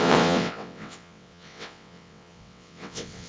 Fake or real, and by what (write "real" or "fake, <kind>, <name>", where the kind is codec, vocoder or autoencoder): fake, vocoder, WaveNeXt